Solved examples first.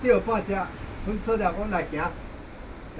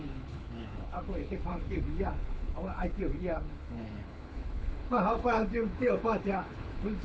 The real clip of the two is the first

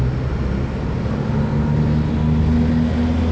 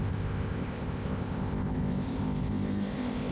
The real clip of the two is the first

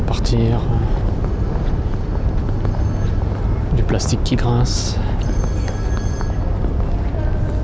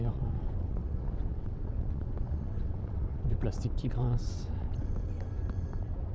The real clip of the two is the first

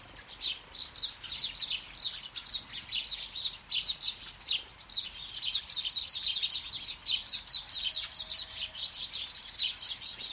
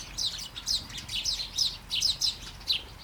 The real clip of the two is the second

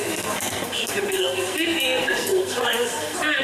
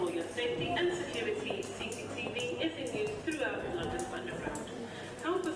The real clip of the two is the second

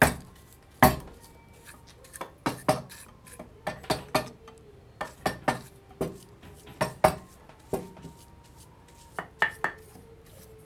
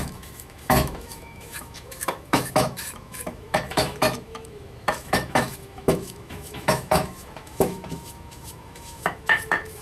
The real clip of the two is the first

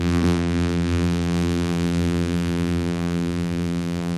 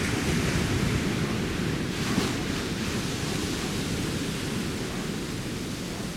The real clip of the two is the second